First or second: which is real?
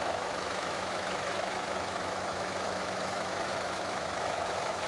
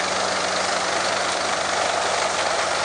second